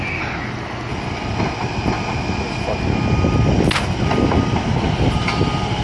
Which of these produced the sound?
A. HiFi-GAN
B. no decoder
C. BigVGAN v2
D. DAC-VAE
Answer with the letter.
B